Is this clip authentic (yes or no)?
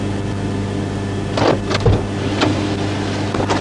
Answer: yes